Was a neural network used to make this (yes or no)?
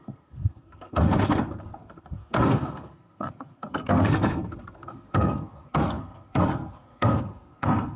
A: yes